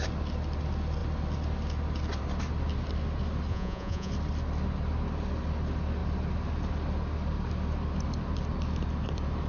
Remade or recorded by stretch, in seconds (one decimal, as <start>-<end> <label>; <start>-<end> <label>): 0.0-3.5 recorded; 3.5-4.1 remade; 4.1-9.5 recorded